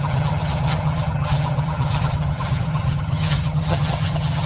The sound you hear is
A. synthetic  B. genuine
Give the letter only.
A